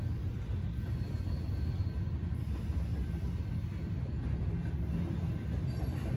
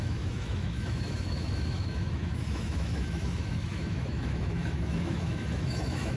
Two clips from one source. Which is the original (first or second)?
first